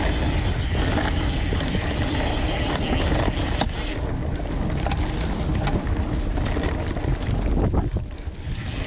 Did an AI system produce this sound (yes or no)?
no